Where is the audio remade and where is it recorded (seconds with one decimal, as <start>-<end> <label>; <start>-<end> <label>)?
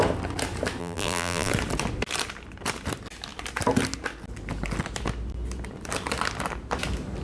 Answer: 0.0-0.8 recorded; 0.8-1.5 remade; 1.5-7.2 recorded